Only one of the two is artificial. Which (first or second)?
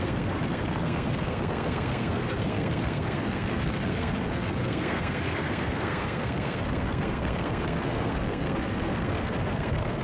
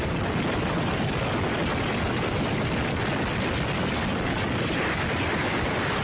first